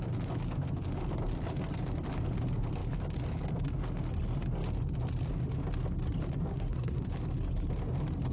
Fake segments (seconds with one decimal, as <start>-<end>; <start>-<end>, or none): 6.5-7.1